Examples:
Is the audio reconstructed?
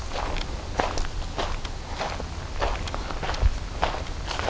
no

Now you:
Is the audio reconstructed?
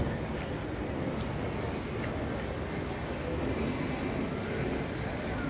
no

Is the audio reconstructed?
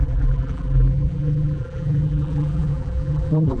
yes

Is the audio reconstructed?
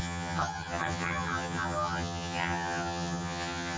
yes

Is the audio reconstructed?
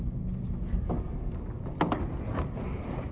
no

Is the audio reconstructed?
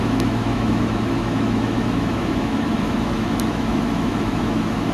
yes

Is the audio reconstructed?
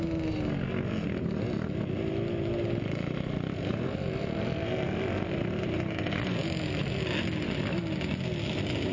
no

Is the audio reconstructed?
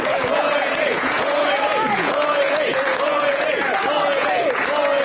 yes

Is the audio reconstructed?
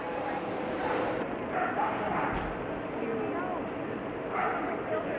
no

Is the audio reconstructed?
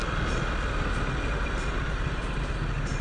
no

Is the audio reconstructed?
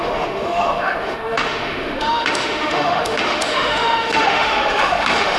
yes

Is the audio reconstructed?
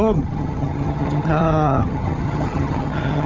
yes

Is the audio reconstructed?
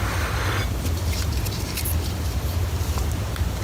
no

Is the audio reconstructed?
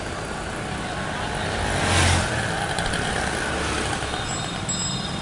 no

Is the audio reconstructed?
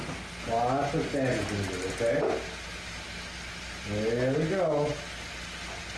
no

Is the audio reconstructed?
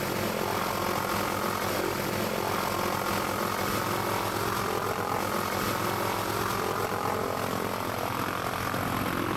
no